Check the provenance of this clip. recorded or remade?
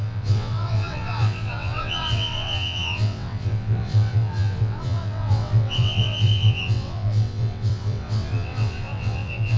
remade